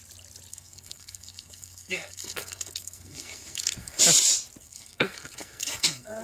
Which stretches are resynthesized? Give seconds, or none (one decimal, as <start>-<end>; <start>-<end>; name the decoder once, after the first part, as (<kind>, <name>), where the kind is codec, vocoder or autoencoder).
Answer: 0.5-4.0 (codec, SNAC); 4.6-6.2